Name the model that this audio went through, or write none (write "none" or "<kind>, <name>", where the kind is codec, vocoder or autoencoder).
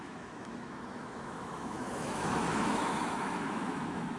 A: autoencoder, DAC-VAE